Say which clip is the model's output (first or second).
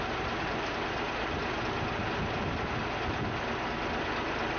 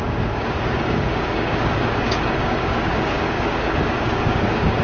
second